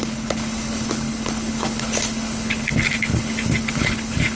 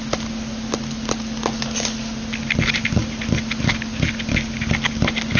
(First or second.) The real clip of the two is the second